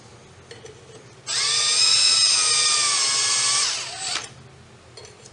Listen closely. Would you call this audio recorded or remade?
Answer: recorded